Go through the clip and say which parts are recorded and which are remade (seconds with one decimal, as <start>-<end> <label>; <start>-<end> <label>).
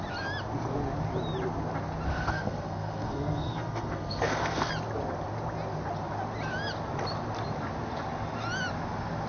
0.0-2.1 recorded; 2.1-4.7 remade; 4.7-9.3 recorded